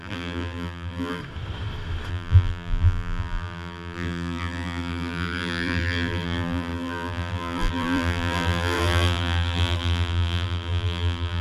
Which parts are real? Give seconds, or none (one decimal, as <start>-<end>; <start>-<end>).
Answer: 1.2-2.1